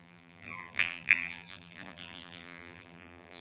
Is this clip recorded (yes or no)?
no